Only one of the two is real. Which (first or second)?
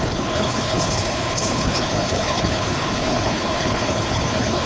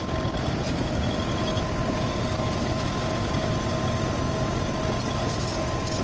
second